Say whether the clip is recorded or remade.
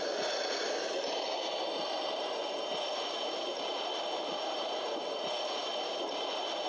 remade